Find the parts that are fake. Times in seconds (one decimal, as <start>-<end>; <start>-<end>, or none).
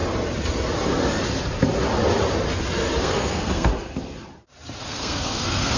3.0-3.7; 4.8-5.8